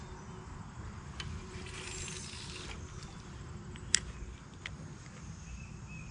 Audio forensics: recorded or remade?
recorded